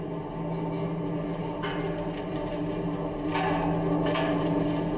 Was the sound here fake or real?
real